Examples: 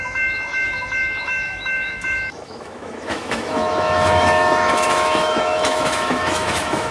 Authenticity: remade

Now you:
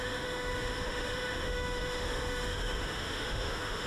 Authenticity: remade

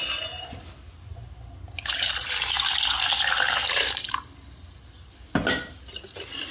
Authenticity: recorded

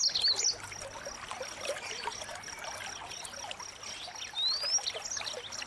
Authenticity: recorded